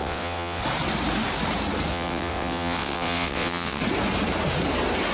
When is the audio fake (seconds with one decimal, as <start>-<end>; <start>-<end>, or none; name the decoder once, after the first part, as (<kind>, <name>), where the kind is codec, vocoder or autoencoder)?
0.0-0.6 (vocoder, WaveNeXt); 1.9-3.8

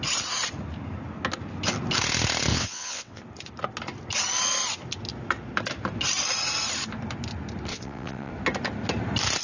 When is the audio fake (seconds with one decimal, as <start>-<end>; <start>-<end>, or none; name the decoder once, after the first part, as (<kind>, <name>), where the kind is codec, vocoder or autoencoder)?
2.5-3.2 (vocoder, WaveNeXt); 7.7-8.3

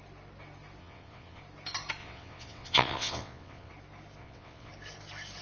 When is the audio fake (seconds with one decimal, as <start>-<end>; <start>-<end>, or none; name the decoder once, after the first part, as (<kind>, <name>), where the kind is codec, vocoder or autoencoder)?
0.8-1.4 (vocoder, WaveNeXt); 2.0-3.7; 4.2-4.7